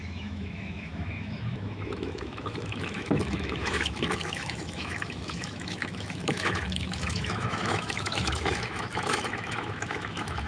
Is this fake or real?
fake